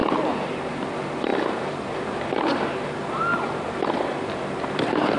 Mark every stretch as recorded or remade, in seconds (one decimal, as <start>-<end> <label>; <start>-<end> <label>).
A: 0.0-0.7 remade; 0.7-5.2 recorded